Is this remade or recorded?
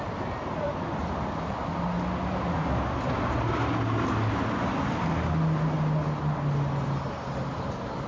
recorded